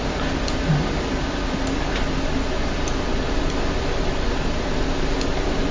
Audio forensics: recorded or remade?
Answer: recorded